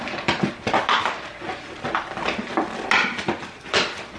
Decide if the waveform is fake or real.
real